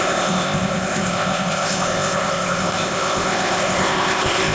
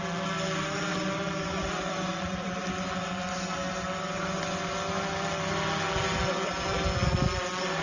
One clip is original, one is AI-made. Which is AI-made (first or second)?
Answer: first